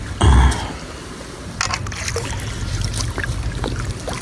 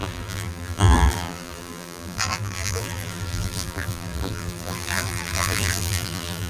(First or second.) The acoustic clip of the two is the first